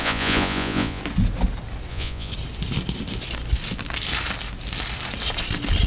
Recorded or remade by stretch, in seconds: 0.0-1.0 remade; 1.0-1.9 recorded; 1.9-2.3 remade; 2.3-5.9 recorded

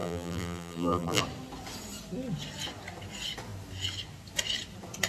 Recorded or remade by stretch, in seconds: 0.0-1.2 remade; 1.2-5.1 recorded